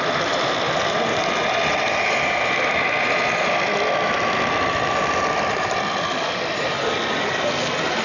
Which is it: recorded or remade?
recorded